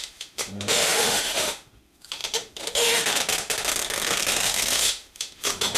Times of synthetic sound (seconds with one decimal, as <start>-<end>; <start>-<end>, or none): 0.0-5.8